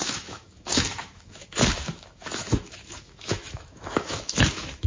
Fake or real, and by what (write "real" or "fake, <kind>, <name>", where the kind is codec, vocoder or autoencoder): fake, autoencoder, DAC-VAE